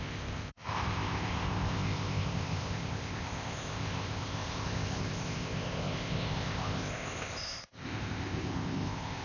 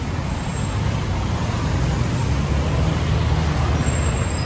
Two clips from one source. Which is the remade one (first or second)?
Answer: first